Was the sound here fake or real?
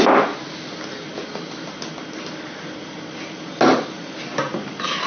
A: real